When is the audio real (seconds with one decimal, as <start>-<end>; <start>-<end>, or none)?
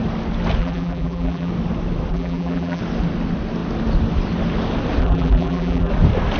0.0-0.6; 1.5-2.1; 2.8-5.0; 5.9-6.4